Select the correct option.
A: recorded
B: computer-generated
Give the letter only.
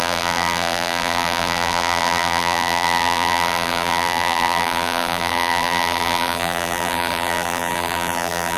B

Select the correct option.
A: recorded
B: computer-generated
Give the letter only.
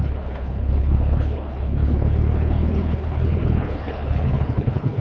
B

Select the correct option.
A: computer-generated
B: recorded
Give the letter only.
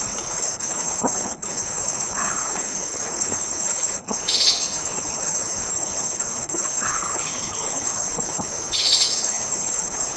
A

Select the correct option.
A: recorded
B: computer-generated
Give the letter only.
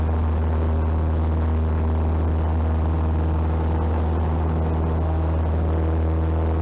A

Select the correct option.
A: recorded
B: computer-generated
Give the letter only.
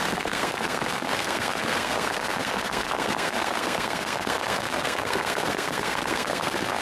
B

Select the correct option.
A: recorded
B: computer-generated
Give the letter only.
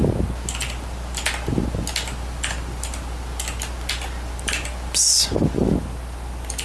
A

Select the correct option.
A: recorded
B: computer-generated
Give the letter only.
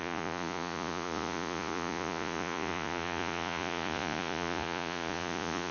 B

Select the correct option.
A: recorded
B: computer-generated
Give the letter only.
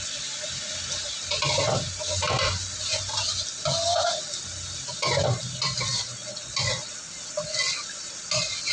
A